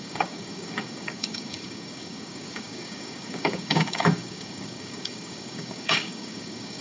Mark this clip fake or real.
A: fake